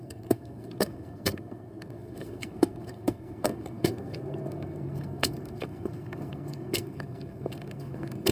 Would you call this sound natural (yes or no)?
no